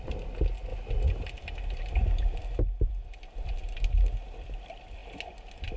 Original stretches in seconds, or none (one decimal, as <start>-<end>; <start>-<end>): 0.0-5.8